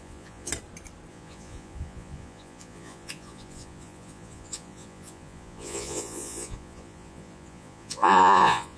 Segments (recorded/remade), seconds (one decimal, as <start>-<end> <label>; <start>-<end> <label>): 0.0-0.5 remade; 0.5-1.1 recorded; 1.1-8.8 remade

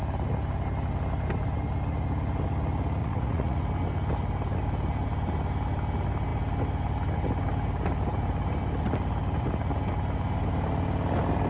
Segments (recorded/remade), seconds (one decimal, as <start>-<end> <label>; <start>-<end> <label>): 0.0-3.0 recorded; 3.0-3.6 remade; 3.6-11.5 recorded

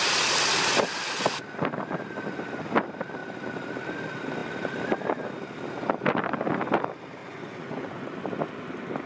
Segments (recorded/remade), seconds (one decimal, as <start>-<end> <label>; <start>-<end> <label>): 0.0-7.2 recorded; 7.2-8.2 remade; 8.2-9.1 recorded

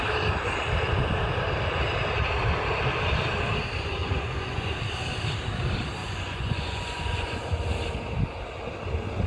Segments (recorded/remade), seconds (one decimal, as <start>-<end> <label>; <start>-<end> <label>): 0.0-4.0 recorded; 4.0-4.7 remade; 4.7-6.0 recorded; 6.0-7.4 remade; 7.4-9.3 recorded

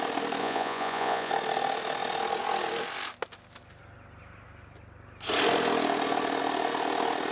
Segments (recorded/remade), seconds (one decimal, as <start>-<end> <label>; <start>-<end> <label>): 0.0-0.4 recorded; 0.4-1.3 remade; 1.3-7.3 recorded

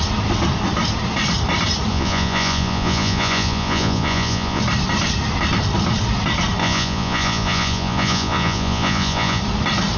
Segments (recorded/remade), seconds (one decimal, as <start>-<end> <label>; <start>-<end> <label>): 0.0-1.9 recorded; 1.9-4.6 remade; 4.6-6.6 recorded; 6.6-9.4 remade; 9.4-10.0 recorded

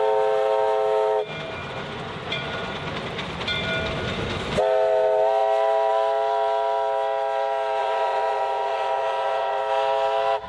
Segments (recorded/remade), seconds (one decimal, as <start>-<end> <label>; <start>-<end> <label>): 0.0-1.6 recorded; 1.6-2.9 remade; 2.9-7.8 recorded; 7.8-9.6 remade; 9.6-10.5 recorded